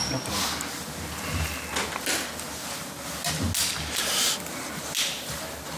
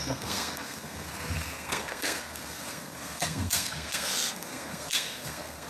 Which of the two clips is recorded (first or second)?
first